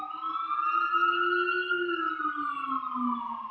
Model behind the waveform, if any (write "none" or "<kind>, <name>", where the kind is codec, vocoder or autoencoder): none